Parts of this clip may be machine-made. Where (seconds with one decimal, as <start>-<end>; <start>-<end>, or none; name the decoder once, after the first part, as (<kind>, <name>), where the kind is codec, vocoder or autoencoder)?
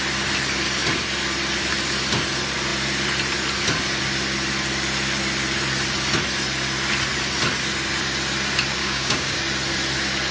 8.8-9.4 (codec, DAC)